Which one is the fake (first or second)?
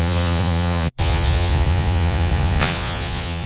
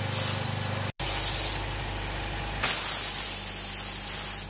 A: first